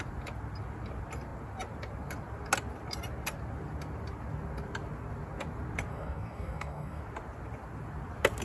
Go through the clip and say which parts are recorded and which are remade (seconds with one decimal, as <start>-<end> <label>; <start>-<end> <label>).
0.0-5.9 recorded; 5.9-7.0 remade; 7.0-8.4 recorded

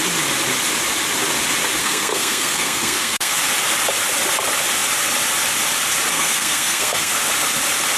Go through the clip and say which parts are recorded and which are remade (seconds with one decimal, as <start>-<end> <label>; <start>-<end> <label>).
0.0-1.8 recorded; 1.8-3.4 remade; 3.4-6.1 recorded; 6.1-7.1 remade; 7.1-8.0 recorded

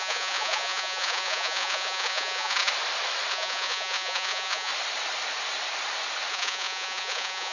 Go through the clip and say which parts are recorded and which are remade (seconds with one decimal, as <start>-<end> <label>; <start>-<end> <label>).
0.0-2.7 remade; 2.7-3.3 recorded; 3.3-4.7 remade; 4.7-6.3 recorded; 6.3-7.5 remade

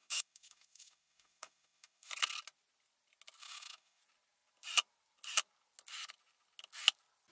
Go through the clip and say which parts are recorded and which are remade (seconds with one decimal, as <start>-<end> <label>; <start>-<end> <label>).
0.0-2.1 remade; 2.1-3.4 recorded; 3.4-4.0 remade; 4.0-7.3 recorded

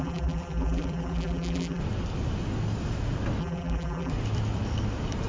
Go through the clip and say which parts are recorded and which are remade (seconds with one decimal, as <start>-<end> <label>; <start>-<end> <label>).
0.0-1.8 remade; 1.8-3.4 recorded; 3.4-4.1 remade; 4.1-5.3 recorded

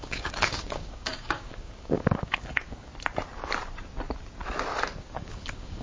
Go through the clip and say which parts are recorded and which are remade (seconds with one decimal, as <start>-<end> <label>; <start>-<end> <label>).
0.0-2.9 remade; 2.9-5.0 recorded; 5.0-5.8 remade

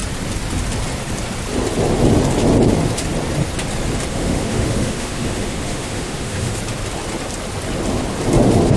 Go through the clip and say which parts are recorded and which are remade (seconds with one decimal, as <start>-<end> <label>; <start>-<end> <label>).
0.0-4.1 recorded; 4.1-6.6 remade; 6.6-8.8 recorded

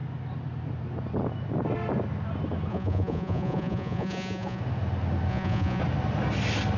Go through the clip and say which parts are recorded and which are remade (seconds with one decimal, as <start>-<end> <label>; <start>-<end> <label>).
0.0-2.7 recorded; 2.7-4.6 remade; 4.6-5.3 recorded; 5.3-5.8 remade; 5.8-6.8 recorded